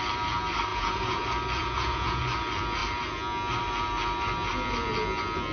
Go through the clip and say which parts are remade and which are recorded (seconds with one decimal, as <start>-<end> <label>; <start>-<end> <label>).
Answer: 0.0-0.7 recorded; 0.7-1.2 remade; 1.2-1.6 recorded; 1.6-2.2 remade; 2.2-5.5 recorded